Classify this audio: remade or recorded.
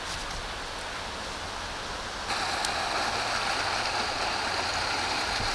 recorded